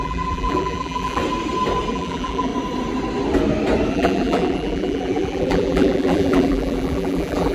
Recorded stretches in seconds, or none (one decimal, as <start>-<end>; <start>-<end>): 1.2-1.9; 2.5-3.9